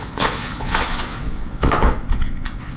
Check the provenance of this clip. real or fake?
fake